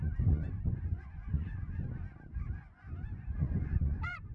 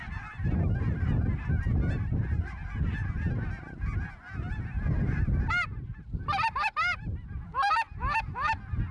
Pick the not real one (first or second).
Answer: first